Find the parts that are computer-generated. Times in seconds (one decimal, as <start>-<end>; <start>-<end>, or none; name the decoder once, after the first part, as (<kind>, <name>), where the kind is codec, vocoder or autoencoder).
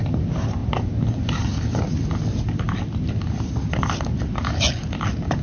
none